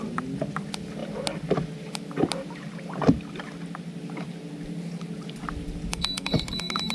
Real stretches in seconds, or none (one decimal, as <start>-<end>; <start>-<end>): 0.0-5.9